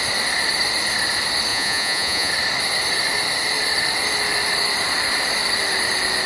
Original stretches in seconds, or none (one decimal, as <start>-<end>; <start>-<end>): 0.0-1.5; 2.3-6.3